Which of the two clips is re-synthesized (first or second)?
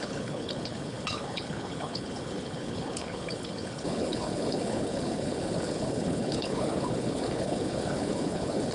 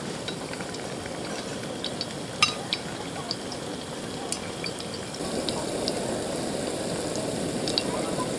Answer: first